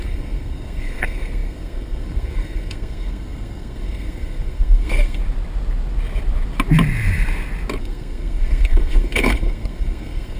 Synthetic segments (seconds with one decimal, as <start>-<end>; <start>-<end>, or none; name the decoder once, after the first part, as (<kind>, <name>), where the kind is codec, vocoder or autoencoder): 0.0-5.2 (codec, SNAC); 7.8-10.4